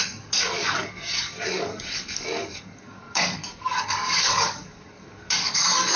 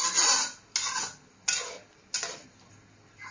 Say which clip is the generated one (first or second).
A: first